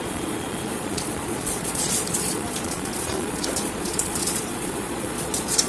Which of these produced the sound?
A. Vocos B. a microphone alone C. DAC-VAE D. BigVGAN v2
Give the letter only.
A